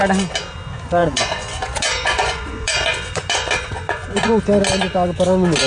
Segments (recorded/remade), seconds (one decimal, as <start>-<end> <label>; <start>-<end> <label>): 0.0-1.0 recorded; 1.0-4.4 remade; 4.4-5.7 recorded